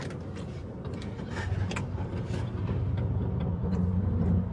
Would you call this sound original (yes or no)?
yes